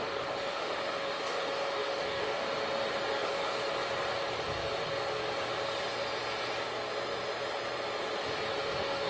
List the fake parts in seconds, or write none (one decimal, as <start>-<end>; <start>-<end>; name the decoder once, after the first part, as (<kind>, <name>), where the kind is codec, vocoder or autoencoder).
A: 0.0-2.4 (autoencoder, DAC-VAE); 3.1-3.5; 8.5-9.1